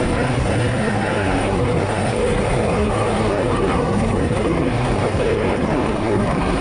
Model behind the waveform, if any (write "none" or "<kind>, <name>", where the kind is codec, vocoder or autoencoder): codec, SNAC